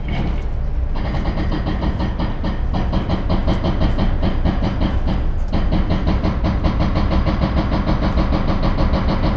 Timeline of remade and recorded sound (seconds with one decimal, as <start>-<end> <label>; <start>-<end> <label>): 0.0-9.4 recorded